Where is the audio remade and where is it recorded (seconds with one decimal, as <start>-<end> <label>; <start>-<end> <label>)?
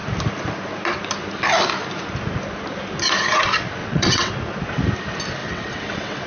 0.0-3.8 recorded; 3.8-4.3 remade; 4.3-5.4 recorded; 5.4-6.3 remade